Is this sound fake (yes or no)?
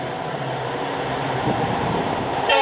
yes